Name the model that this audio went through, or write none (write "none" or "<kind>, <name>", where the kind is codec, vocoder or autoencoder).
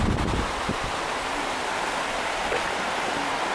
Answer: none